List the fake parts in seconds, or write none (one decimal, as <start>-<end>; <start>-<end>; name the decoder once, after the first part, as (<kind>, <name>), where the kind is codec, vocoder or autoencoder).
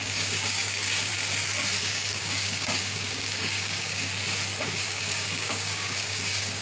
0.0-1.1 (codec, DAC); 1.8-4.1; 4.6-6.6